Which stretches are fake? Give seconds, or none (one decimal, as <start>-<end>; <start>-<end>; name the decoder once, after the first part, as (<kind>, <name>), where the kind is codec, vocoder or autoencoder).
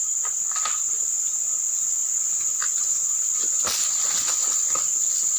none